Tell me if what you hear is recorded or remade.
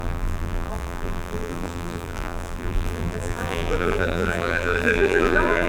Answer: remade